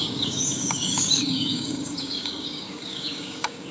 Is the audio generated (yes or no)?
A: yes